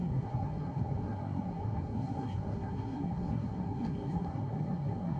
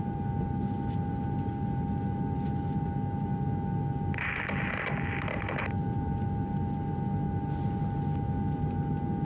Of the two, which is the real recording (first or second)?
second